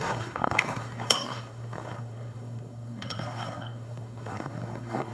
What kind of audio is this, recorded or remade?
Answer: remade